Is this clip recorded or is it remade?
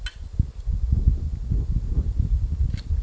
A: recorded